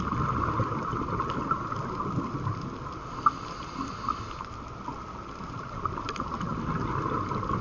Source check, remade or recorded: recorded